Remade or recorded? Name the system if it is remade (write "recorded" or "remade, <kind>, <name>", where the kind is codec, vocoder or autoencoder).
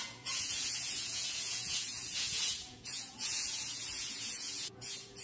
remade, vocoder, Vocos